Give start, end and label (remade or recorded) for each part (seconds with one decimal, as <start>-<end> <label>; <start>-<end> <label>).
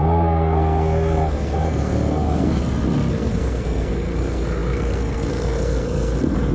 0.0-2.6 remade; 2.6-3.1 recorded; 3.1-6.5 remade